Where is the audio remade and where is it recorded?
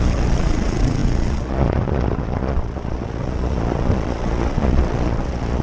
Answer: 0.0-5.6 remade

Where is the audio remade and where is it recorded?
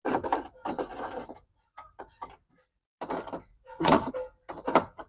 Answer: 0.0-3.5 recorded; 3.5-4.1 remade; 4.1-5.1 recorded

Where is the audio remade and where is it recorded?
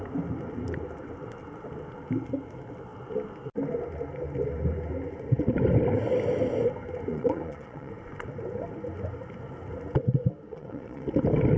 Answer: 0.0-7.1 recorded; 7.1-7.9 remade; 7.9-10.5 recorded; 10.5-11.1 remade; 11.1-11.6 recorded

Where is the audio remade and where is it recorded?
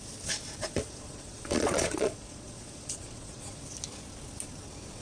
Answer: 0.0-0.6 recorded; 0.6-3.6 remade; 3.6-5.0 recorded